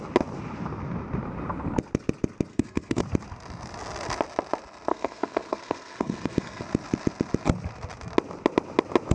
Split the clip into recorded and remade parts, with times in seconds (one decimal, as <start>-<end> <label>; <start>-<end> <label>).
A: 0.0-2.5 recorded; 2.5-3.0 remade; 3.0-4.9 recorded; 4.9-6.6 remade; 6.6-9.1 recorded